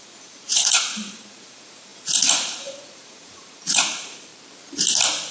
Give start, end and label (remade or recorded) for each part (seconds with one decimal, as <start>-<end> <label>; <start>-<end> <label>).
0.0-4.3 remade; 4.3-5.3 recorded